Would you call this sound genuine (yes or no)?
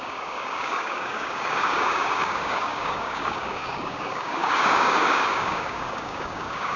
no